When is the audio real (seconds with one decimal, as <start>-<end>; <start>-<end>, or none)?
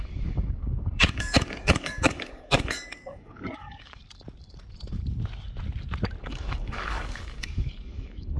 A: 4.0-6.2